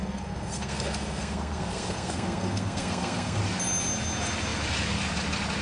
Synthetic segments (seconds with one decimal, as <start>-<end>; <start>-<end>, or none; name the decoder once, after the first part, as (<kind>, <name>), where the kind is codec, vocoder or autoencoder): 0.0-3.4 (codec, SNAC)